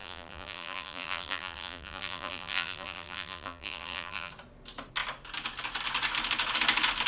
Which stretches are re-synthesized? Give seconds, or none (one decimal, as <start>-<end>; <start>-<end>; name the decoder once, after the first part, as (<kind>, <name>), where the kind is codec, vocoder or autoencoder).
0.0-4.3 (vocoder, BigVGAN v2)